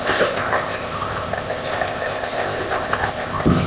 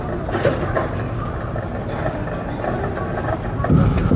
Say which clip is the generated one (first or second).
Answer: first